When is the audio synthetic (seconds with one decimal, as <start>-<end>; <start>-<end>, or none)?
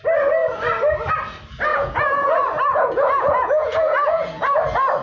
1.7-2.3; 2.7-4.6